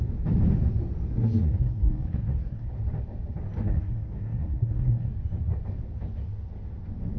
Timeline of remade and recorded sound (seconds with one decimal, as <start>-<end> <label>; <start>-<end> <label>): 0.0-1.1 recorded; 1.1-2.7 remade; 2.7-3.6 recorded; 3.6-5.1 remade; 5.1-7.2 recorded